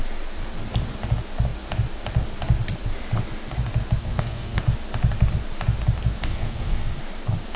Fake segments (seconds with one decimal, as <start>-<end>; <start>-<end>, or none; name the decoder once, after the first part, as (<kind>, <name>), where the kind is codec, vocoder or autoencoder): 4.0-4.6 (codec, SNAC); 6.3-7.0